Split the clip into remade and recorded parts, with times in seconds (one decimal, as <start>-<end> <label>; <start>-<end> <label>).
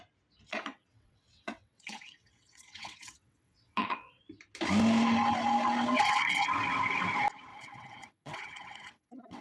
0.0-0.5 recorded; 0.5-4.2 remade; 4.2-7.5 recorded; 7.5-9.4 remade